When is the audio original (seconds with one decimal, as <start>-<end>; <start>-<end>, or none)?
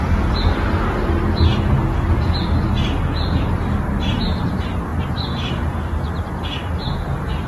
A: 0.0-7.5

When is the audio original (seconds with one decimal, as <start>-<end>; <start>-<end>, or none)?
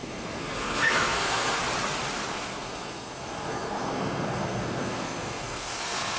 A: 1.6-2.3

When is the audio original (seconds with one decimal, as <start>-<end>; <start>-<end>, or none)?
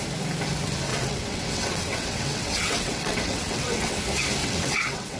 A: 0.0-0.9; 4.0-4.4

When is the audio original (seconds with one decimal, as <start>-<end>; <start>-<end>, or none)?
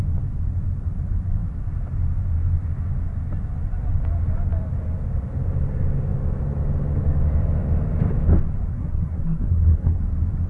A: 0.0-8.7; 10.0-10.5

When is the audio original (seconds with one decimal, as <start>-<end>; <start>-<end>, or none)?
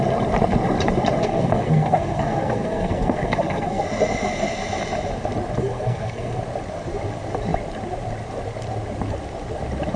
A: 0.0-1.2; 3.8-5.6; 6.4-10.0